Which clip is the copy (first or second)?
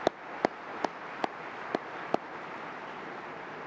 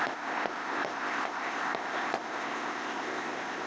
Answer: second